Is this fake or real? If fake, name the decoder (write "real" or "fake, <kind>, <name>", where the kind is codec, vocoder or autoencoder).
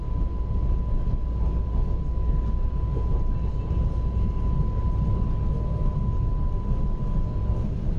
real